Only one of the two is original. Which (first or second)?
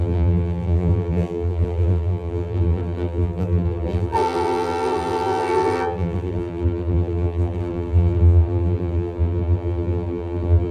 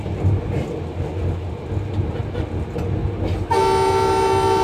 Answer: second